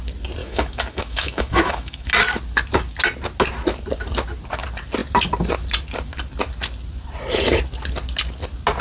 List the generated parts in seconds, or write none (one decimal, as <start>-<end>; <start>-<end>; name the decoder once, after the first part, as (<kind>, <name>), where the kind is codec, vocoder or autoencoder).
0.4-2.1 (autoencoder, DAC-VAE)